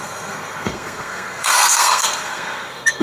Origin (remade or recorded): remade